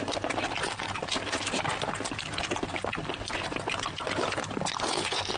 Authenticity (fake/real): real